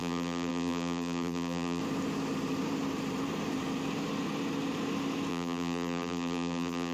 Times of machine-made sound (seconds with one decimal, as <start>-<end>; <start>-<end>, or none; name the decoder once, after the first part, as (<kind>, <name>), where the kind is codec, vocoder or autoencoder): 0.0-1.8 (vocoder, BigVGAN v2); 5.3-6.9